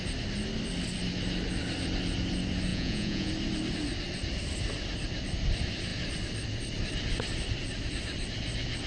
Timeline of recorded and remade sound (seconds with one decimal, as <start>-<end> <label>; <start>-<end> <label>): 0.0-2.7 recorded; 2.7-3.3 remade; 3.3-8.9 recorded